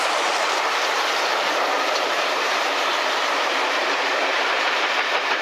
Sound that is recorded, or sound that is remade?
remade